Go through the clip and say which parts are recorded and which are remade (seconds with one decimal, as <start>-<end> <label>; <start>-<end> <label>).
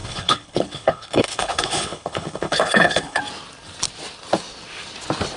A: 0.0-3.2 remade; 3.2-5.4 recorded